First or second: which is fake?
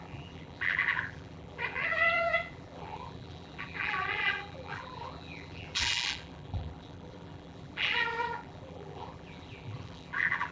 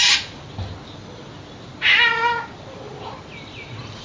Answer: first